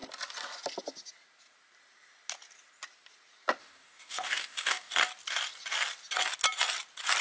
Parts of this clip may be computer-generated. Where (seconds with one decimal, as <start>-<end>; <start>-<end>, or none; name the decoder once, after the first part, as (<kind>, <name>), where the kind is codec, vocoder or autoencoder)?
3.6-4.9 (codec, DAC)

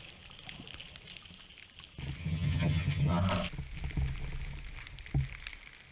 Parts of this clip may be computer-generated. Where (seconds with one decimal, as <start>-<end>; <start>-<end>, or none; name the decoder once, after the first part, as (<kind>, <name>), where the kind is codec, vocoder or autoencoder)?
2.2-3.2 (vocoder, HiFi-GAN)